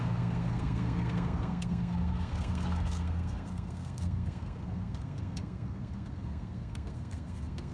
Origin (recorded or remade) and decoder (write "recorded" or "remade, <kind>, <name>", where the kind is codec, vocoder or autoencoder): remade, codec, SNAC